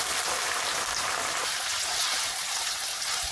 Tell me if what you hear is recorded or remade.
recorded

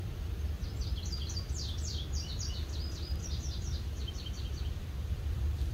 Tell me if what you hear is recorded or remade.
remade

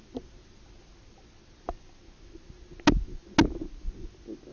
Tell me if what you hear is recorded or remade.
recorded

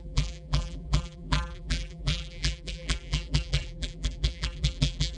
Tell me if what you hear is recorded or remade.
remade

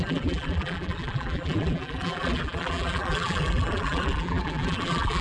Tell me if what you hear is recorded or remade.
remade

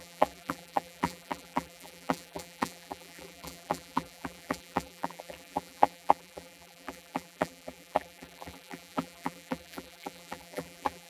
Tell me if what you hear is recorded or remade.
remade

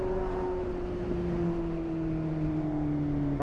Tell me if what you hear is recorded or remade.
recorded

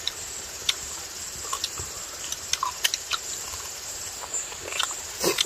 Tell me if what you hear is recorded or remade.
remade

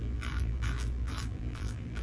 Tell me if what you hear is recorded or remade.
remade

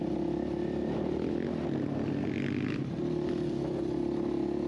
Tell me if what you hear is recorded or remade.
recorded